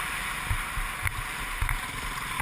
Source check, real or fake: real